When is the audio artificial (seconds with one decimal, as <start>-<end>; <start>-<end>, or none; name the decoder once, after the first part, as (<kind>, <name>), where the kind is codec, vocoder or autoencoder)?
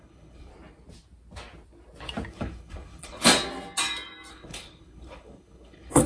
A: 0.0-0.5 (codec, HILCodec); 2.3-3.3; 4.3-6.1